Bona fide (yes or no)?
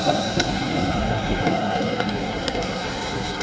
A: no